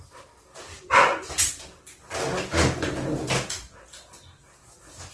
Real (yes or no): yes